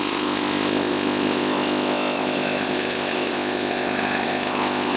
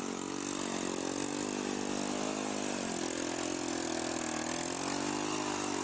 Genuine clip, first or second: second